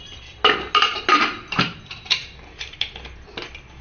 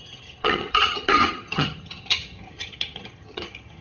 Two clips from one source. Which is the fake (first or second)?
second